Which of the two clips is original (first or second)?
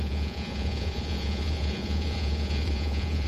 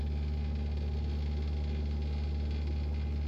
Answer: second